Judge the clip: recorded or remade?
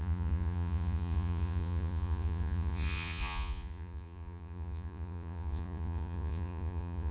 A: remade